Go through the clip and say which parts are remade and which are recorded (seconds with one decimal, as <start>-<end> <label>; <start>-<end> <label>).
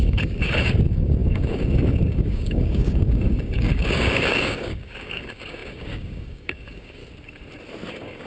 0.0-7.0 remade; 7.0-7.9 recorded; 7.9-8.3 remade